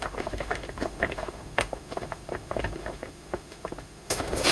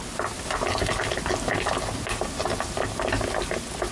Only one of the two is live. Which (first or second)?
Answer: second